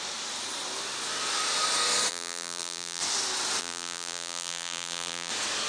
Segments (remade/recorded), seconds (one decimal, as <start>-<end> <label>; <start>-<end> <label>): 0.0-2.1 recorded; 2.1-3.0 remade; 3.0-3.6 recorded; 3.6-5.3 remade; 5.3-5.7 recorded